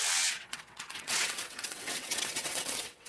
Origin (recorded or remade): remade